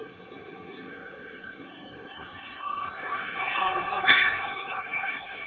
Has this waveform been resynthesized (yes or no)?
yes